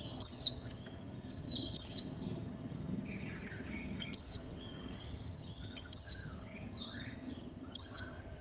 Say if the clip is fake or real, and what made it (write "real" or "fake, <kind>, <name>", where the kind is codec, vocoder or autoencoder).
fake, vocoder, HiFi-GAN